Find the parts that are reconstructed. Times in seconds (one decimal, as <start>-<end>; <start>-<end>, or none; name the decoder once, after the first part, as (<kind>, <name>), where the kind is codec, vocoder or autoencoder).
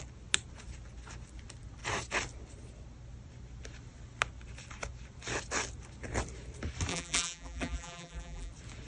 6.9-8.5 (vocoder, BigVGAN v2)